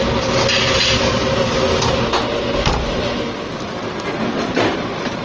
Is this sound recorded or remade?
recorded